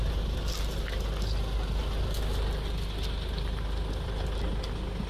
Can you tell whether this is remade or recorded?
recorded